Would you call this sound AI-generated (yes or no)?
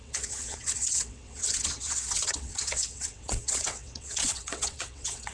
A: yes